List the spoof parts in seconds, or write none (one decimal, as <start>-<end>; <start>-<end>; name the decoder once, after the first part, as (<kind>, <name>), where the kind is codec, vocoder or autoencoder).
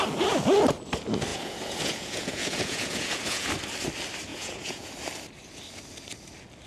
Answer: 1.3-3.5 (vocoder, Vocos); 4.3-4.9